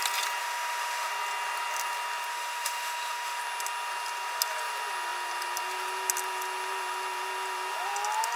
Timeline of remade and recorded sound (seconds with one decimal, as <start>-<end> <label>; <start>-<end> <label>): 0.0-0.4 recorded; 0.4-1.1 remade; 1.1-2.3 recorded; 2.3-3.4 remade; 3.4-8.4 recorded